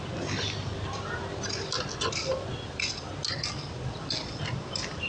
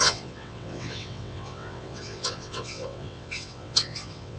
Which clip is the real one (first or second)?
first